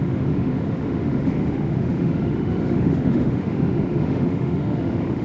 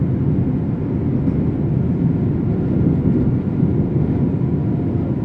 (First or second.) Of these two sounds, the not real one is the first